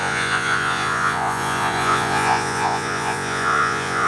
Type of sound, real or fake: fake